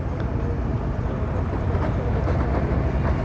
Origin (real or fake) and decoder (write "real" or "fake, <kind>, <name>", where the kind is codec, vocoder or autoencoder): real